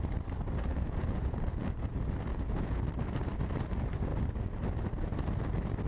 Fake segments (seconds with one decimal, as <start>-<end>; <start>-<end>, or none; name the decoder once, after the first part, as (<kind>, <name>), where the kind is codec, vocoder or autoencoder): 0.7-1.9 (vocoder, Vocos); 2.3-2.8